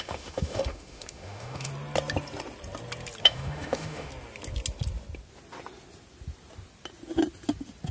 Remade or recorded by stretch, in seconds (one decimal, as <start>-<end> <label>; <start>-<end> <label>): 0.0-1.7 remade; 1.7-3.2 recorded; 3.2-4.1 remade; 4.1-7.9 recorded